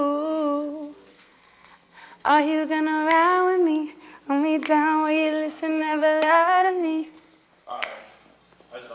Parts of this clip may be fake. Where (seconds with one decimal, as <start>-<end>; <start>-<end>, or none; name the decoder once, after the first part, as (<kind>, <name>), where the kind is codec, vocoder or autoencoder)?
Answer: 1.1-2.4 (codec, SNAC); 5.7-8.0